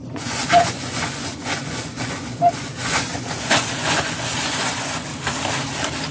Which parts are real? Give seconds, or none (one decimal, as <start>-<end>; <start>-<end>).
5.1-6.1